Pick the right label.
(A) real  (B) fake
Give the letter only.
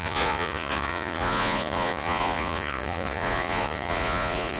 B